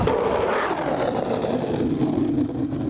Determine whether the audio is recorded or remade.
recorded